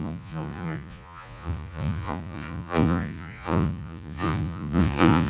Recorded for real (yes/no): no